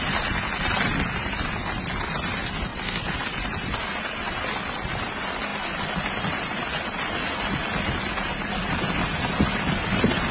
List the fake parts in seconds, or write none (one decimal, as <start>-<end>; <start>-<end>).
none